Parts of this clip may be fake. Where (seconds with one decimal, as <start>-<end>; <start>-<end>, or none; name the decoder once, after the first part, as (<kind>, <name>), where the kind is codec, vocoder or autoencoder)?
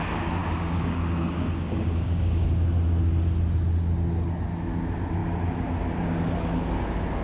0.4-2.5 (codec, DAC)